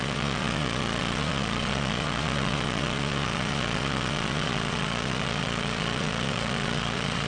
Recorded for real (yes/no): no